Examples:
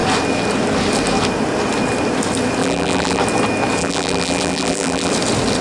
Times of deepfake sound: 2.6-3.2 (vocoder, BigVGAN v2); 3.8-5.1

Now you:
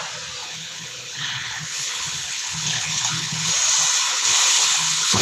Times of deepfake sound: 0.4-3.5 (codec, HILCodec); 4.1-5.2

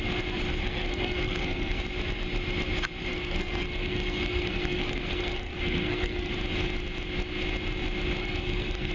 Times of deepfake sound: 0.6-1.8 (codec, SNAC); 3.1-6.3; 8.2-8.9

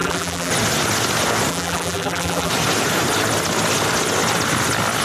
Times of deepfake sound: 0.0-0.5 (vocoder, BigVGAN v2); 1.5-2.5

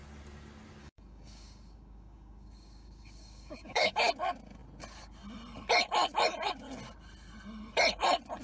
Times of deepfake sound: 0.8-4.1 (codec, DAC)